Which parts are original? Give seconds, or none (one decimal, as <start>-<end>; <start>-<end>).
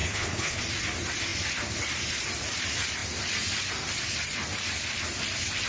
0.6-5.7